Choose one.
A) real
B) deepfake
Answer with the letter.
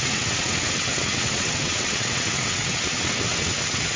B